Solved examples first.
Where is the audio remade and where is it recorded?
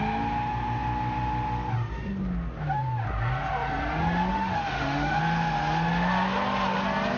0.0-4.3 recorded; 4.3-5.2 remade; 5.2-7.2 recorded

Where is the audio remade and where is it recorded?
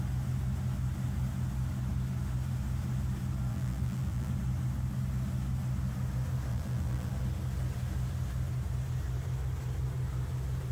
0.0-3.5 recorded; 3.5-4.3 remade; 4.3-6.5 recorded; 6.5-7.1 remade; 7.1-10.7 recorded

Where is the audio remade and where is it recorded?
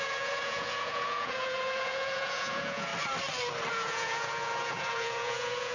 0.0-2.9 remade; 2.9-3.7 recorded; 3.7-5.7 remade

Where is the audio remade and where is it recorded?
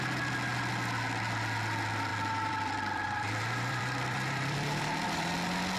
0.0-2.1 recorded; 2.1-5.2 remade; 5.2-5.8 recorded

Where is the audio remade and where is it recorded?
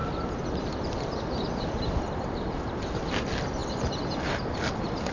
0.0-5.1 recorded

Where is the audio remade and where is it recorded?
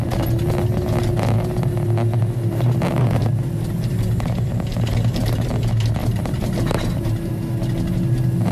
0.0-6.0 recorded; 6.0-7.3 remade; 7.3-8.5 recorded